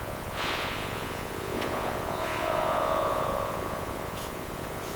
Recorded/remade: remade